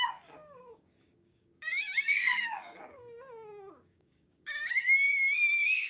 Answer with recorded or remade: remade